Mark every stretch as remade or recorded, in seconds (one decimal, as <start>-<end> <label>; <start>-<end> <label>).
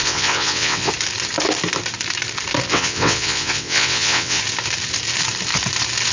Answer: 0.0-0.9 remade; 0.9-2.7 recorded; 2.7-4.4 remade; 4.4-6.1 recorded